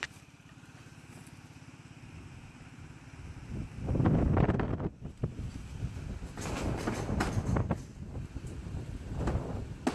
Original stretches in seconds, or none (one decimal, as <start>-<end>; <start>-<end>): 0.0-9.9